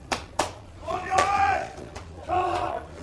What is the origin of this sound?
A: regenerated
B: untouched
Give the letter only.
A